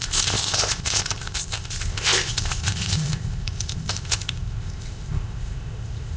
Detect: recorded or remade remade